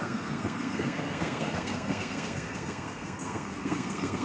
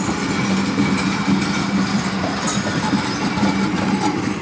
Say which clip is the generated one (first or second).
first